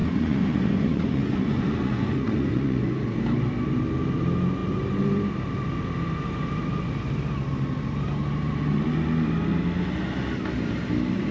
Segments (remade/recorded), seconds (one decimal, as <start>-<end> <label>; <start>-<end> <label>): 0.0-3.0 remade; 3.0-11.3 recorded